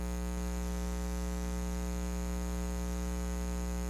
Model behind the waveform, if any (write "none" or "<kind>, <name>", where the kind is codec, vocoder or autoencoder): none